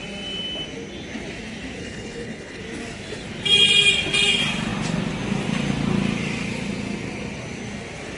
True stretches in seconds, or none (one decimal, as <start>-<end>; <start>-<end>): 0.0-1.8; 2.6-8.2